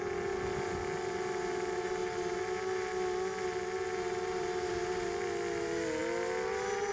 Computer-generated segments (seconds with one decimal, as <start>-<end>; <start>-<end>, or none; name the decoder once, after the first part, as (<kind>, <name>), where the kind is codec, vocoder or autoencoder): none

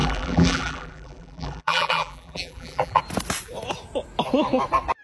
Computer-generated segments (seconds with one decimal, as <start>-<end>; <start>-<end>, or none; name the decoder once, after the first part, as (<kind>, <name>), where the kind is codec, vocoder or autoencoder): 0.0-3.0 (vocoder, BigVGAN v2)

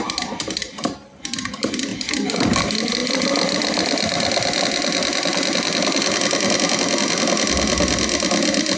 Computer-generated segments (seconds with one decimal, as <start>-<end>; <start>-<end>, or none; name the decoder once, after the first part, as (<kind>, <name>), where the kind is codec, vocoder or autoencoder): 1.9-2.6 (vocoder, BigVGAN v2)

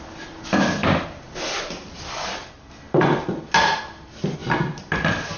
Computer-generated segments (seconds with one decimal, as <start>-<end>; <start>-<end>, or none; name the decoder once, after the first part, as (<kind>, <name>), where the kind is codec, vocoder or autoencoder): 0.8-2.5 (vocoder, BigVGAN v2); 4.4-5.4

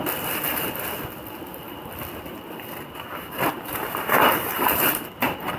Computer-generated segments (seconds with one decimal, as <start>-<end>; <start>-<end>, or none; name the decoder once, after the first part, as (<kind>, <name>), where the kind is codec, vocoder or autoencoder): 3.5-5.1 (vocoder, BigVGAN v2)